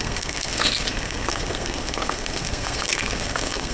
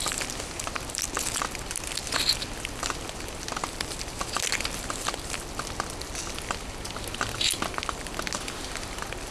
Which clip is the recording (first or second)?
second